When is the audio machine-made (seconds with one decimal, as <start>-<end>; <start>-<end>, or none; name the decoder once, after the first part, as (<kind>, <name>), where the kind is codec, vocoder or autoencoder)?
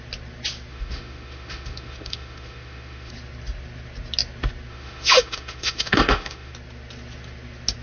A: 0.7-3.1 (autoencoder, DAC-VAE); 4.7-6.5